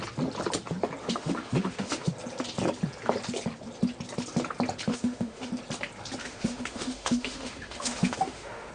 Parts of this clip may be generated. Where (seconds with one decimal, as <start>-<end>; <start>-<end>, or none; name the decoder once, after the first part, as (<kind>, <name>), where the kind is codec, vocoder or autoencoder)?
1.0-2.1 (autoencoder, DAC-VAE); 4.9-5.5; 6.2-8.7